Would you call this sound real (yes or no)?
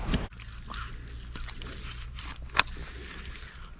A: yes